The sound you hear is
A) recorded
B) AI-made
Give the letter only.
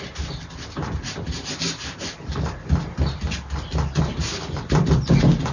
A